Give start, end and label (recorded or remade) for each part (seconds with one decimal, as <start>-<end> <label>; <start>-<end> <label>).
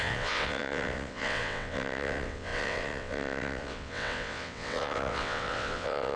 0.0-6.2 remade